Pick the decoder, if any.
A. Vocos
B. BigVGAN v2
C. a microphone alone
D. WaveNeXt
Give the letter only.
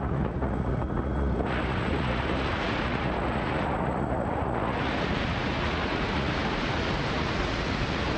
A